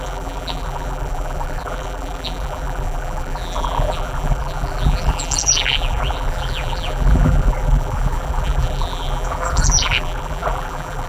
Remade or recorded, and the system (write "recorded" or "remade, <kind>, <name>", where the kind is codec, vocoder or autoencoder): remade, vocoder, BigVGAN v2